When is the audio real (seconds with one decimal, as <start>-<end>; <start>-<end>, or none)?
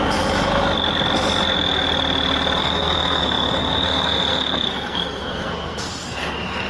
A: 0.0-2.6